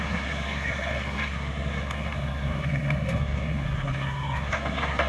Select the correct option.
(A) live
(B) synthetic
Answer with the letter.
B